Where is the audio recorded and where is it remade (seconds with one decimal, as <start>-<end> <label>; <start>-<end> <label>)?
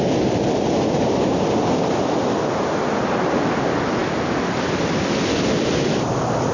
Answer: 0.0-6.5 recorded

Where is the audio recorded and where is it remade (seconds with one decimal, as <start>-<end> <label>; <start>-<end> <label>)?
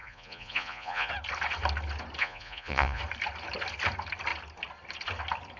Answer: 0.0-1.1 remade; 1.1-2.2 recorded; 2.2-3.0 remade; 3.0-5.6 recorded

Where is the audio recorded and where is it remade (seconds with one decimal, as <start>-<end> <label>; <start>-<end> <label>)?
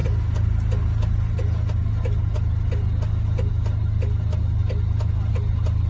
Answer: 0.0-5.9 recorded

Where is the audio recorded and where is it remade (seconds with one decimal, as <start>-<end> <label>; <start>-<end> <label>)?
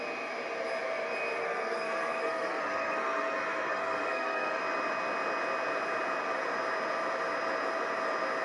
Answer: 0.0-1.4 recorded; 1.4-4.6 remade; 4.6-8.4 recorded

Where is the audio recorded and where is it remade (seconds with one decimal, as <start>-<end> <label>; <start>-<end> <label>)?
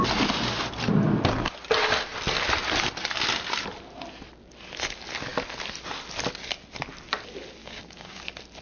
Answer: 0.0-7.6 recorded; 7.6-8.2 remade; 8.2-8.6 recorded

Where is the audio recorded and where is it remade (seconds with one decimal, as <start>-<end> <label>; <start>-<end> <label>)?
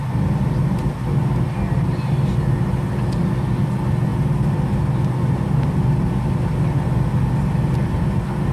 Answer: 0.0-8.5 recorded